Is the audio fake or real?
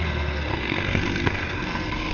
fake